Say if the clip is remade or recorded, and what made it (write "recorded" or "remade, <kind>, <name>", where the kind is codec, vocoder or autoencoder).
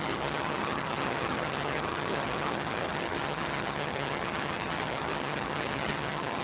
remade, vocoder, HiFi-GAN